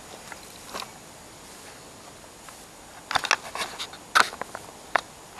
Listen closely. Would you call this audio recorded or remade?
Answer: recorded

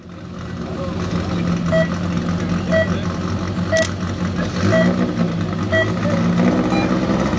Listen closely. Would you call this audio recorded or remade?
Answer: recorded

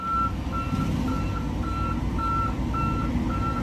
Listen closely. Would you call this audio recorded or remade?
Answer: recorded